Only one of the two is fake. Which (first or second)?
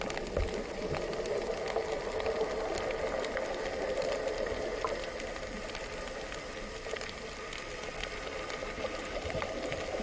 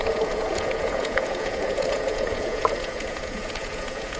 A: second